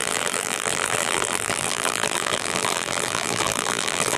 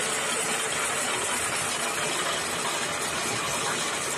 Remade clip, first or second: first